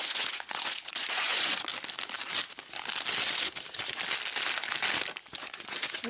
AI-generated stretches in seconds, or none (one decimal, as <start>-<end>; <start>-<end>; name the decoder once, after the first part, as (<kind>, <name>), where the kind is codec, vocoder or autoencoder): 0.0-1.7 (vocoder, Vocos); 5.4-6.1